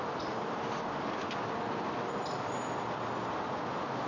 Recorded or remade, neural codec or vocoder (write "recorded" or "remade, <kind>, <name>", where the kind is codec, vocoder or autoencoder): recorded